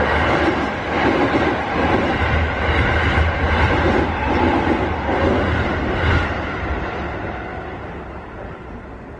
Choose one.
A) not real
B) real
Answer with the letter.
B